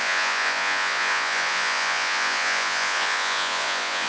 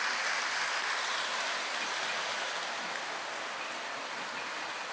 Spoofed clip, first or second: first